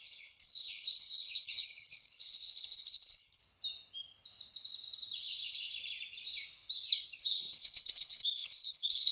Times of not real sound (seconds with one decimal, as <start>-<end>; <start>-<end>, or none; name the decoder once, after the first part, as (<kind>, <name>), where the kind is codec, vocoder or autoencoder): 0.0-3.4 (codec, HILCodec); 7.2-9.1